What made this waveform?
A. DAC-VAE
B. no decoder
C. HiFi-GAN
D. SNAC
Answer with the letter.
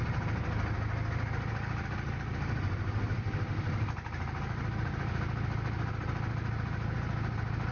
B